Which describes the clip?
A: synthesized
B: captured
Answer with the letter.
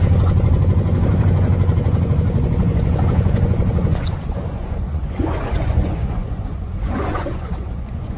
A